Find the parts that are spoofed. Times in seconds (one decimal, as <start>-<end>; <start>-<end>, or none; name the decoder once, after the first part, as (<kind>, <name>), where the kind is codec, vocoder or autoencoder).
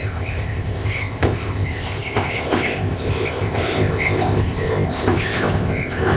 0.0-6.2 (codec, ZipCodec)